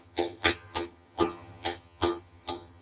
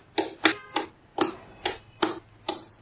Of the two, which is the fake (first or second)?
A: first